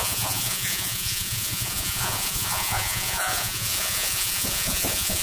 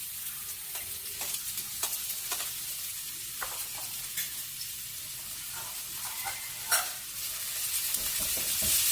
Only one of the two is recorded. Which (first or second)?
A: second